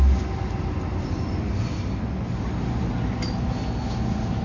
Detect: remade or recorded recorded